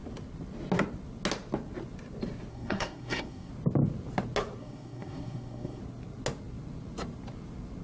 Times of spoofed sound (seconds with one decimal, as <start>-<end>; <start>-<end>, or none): 2.5-3.5; 4.6-5.8